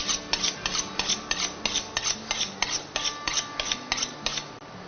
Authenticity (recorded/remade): recorded